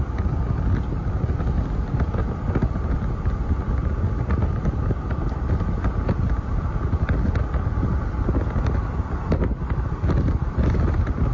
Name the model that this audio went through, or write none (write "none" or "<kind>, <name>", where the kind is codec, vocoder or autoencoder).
none